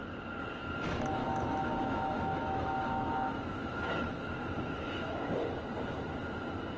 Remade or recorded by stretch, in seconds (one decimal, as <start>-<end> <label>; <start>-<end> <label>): 0.0-1.2 recorded; 1.2-5.3 remade; 5.3-6.8 recorded